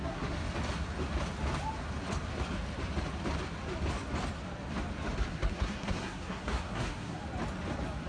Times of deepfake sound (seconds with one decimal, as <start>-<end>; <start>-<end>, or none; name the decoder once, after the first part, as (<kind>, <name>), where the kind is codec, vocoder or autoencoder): 0.0-0.4 (codec, SNAC); 5.3-7.2